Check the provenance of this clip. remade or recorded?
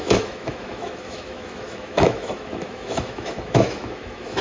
remade